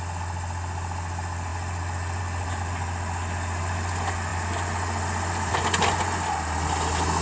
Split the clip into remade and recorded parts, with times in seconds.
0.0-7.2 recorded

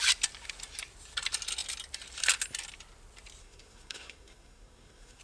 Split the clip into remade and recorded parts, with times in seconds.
0.0-3.4 recorded; 3.4-5.2 remade

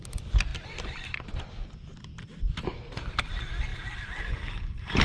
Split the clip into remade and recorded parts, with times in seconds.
0.0-5.0 recorded

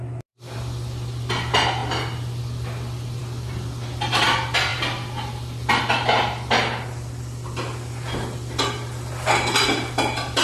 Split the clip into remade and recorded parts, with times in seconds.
0.0-10.4 recorded